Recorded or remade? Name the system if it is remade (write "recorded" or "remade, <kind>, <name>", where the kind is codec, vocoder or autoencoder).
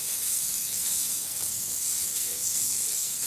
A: remade, codec, SNAC